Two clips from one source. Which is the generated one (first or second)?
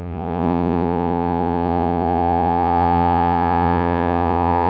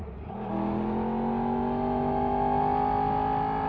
first